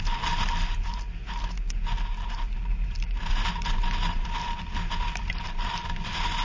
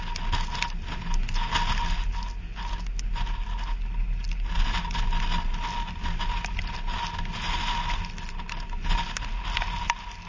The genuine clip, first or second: second